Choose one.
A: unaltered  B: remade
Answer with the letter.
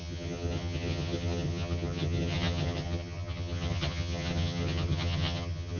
B